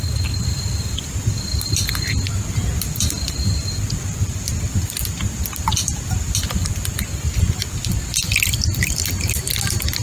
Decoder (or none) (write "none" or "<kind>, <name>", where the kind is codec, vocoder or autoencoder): none